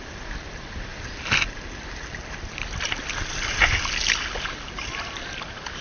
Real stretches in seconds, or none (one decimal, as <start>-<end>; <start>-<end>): 0.0-5.8